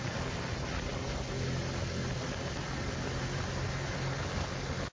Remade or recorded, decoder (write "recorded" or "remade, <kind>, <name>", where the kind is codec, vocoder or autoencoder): recorded